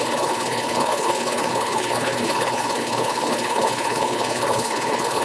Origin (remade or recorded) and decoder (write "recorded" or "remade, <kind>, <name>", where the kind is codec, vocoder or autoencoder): remade, codec, HILCodec